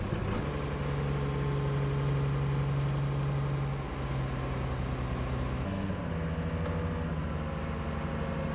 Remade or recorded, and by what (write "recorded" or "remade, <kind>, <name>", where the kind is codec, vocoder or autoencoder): recorded